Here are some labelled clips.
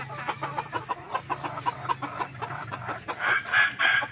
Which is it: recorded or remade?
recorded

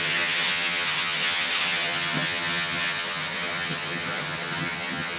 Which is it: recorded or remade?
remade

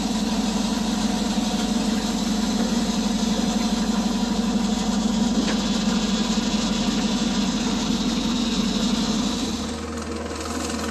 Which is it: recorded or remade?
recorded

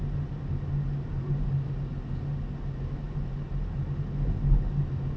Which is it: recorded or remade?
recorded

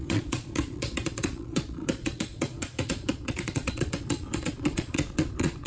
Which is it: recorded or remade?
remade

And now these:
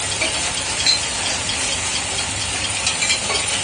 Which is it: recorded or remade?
recorded